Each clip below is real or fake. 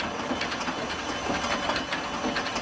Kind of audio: real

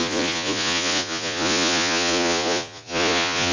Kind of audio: fake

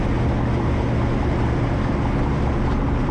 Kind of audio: real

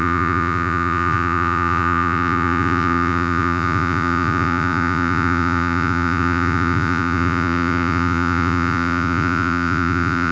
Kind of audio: fake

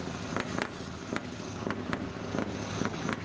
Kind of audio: real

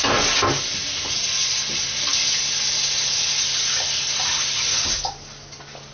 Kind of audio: real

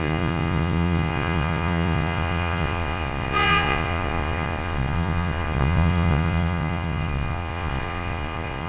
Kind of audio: fake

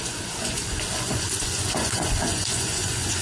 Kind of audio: fake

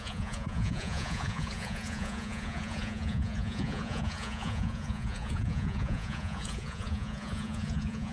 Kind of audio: fake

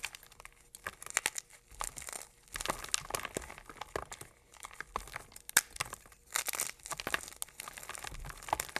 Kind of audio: real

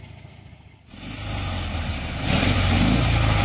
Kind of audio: real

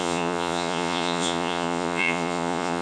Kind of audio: fake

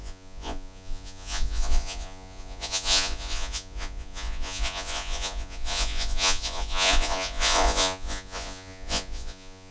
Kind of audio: fake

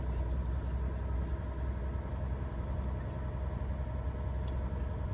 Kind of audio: real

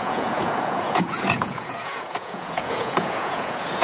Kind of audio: fake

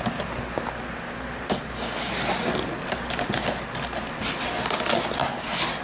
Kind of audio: real